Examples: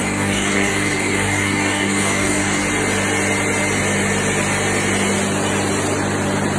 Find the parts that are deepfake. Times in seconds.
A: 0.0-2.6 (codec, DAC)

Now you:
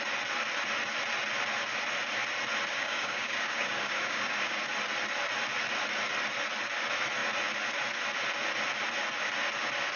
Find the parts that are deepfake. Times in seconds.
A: 2.7-4.6 (codec, DAC)

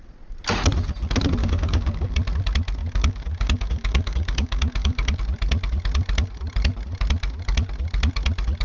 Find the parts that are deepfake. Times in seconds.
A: 1.4-2.1 (codec, DAC); 2.8-5.2